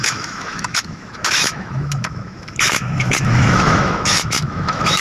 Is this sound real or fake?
fake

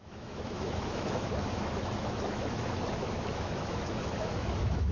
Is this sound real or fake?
fake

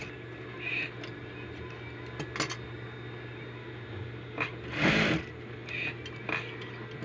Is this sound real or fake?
real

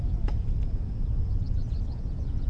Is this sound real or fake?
fake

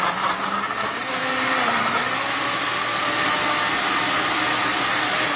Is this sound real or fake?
real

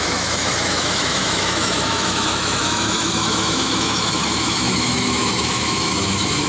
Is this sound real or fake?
fake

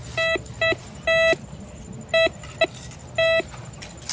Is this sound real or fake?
real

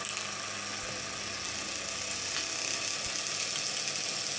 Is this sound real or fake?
real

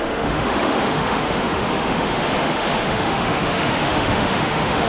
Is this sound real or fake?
fake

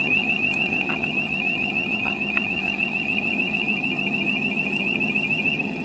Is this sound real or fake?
fake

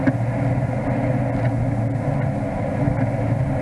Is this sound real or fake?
real